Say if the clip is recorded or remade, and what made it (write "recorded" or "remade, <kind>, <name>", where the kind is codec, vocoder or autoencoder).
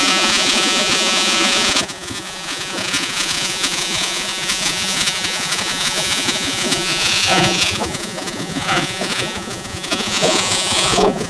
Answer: remade, vocoder, Vocos